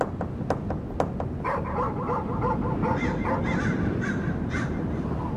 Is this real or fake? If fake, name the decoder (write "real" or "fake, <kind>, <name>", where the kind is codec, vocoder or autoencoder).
real